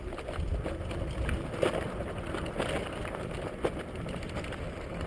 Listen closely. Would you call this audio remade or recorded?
recorded